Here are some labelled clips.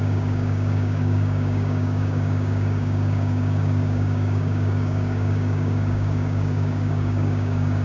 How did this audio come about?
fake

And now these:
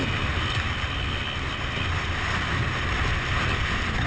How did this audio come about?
real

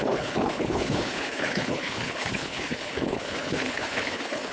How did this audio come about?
fake